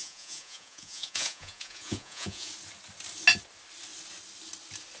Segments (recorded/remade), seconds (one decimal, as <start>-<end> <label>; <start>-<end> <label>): 0.0-2.5 remade; 2.5-5.0 recorded